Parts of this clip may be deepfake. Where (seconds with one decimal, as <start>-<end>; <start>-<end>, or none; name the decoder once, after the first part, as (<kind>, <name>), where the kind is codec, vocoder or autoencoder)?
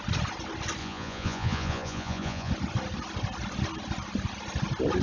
0.8-2.5 (vocoder, Vocos)